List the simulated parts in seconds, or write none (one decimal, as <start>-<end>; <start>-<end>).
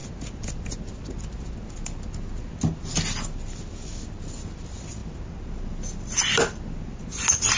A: none